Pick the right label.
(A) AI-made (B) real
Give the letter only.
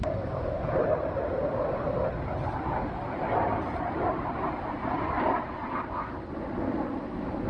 B